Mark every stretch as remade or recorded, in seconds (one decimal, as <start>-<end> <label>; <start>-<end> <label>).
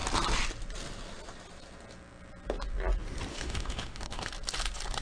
0.0-3.3 recorded; 3.3-4.3 remade; 4.3-5.0 recorded